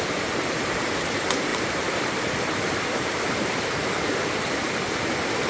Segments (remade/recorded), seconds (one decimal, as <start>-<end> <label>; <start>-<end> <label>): 0.0-5.5 remade

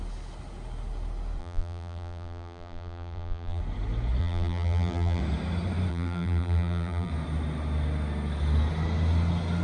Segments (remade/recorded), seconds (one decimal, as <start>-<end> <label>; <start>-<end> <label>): 0.0-1.4 recorded; 1.4-3.6 remade; 3.6-4.2 recorded; 4.2-5.2 remade; 5.2-5.9 recorded; 5.9-7.1 remade; 7.1-9.6 recorded

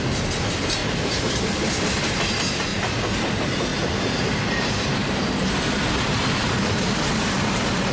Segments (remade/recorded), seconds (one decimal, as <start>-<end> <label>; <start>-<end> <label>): 0.0-0.8 recorded; 0.8-2.2 remade; 2.2-3.7 recorded; 3.7-7.5 remade; 7.5-7.9 recorded

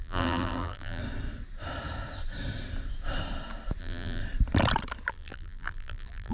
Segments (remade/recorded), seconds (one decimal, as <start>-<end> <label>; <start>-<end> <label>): 0.0-1.0 remade; 1.0-3.8 recorded; 3.8-4.2 remade; 4.2-5.1 recorded; 5.1-6.3 remade

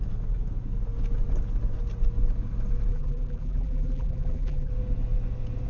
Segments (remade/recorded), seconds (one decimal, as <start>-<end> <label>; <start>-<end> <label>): 0.0-2.9 recorded; 2.9-4.7 remade; 4.7-5.7 recorded